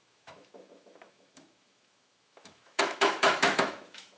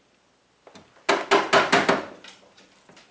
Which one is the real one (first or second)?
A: second